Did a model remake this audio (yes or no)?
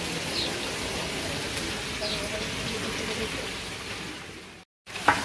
no